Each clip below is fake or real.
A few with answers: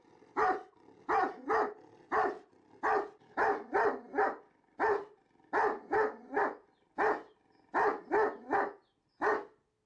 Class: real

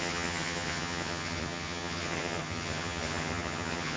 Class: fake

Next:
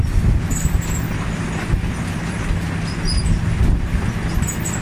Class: real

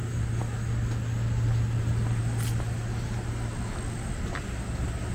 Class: real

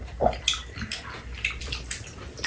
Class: fake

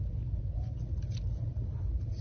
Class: real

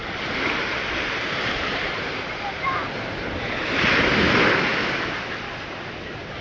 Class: real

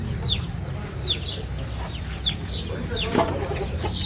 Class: real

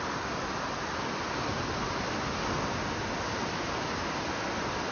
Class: real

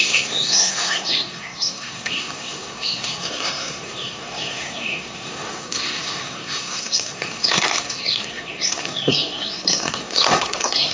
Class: fake